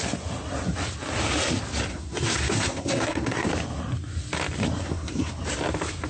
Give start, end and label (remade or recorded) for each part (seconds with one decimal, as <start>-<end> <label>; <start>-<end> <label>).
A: 0.0-1.9 recorded; 1.9-3.5 remade; 3.5-4.8 recorded; 4.8-5.3 remade; 5.3-6.1 recorded